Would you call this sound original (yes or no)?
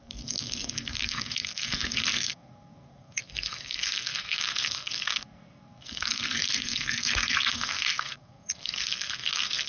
no